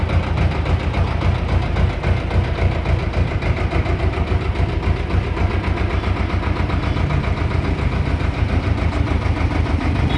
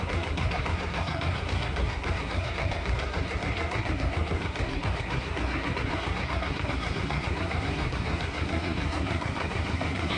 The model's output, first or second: second